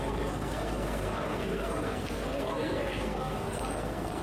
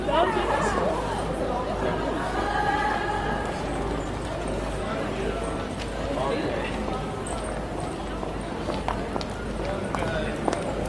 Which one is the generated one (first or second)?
first